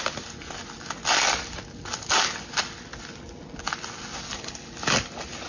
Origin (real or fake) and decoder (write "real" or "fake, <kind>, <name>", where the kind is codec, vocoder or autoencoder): real